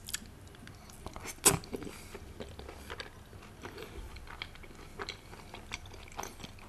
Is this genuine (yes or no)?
yes